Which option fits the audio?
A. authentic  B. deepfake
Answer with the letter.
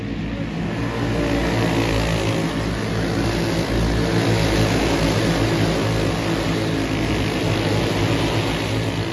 A